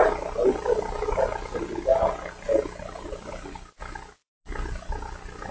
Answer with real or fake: real